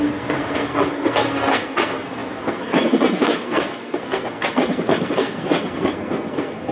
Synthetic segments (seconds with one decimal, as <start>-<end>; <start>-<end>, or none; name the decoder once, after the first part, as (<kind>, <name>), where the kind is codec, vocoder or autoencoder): 0.0-6.7 (codec, SNAC)